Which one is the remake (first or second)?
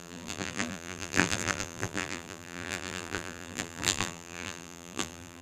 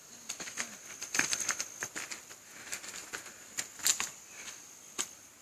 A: first